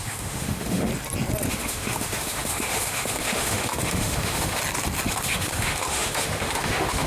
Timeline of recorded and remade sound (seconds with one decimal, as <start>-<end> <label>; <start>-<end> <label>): 0.0-0.9 remade; 0.9-1.5 recorded; 1.5-4.6 remade; 4.6-5.2 recorded; 5.2-7.1 remade